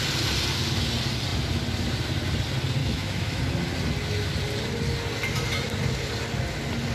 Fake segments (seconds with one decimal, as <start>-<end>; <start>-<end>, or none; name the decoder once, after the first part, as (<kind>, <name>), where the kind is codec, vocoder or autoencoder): 2.8-3.4 (autoencoder, DAC-VAE)